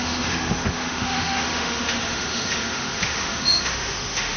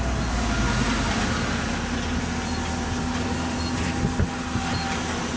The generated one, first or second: first